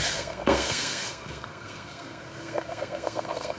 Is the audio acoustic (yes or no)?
no